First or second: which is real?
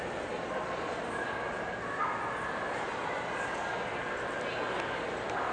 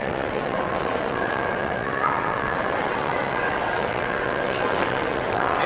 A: first